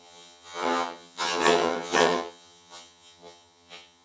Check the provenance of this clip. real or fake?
fake